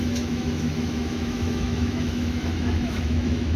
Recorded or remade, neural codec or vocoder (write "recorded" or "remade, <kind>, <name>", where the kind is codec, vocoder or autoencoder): remade, autoencoder, DAC-VAE